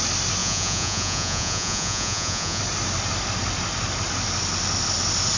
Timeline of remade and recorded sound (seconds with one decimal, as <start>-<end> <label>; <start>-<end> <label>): 0.0-0.4 recorded; 0.4-2.6 remade; 2.6-5.4 recorded